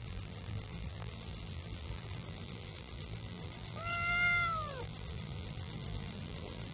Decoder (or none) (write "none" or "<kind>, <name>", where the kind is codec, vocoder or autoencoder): vocoder, BigVGAN v2